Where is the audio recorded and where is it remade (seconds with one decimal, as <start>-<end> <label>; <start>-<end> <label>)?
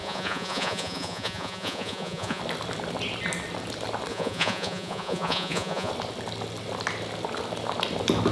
0.0-2.4 remade; 2.4-4.1 recorded; 4.1-5.9 remade; 5.9-8.3 recorded